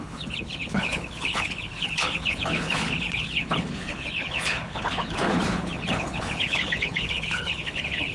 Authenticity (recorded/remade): remade